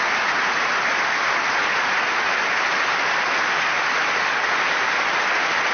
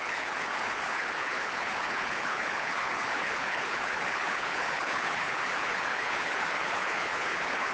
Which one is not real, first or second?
second